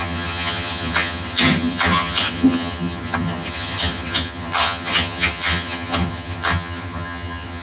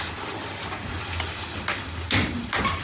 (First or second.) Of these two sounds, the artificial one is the first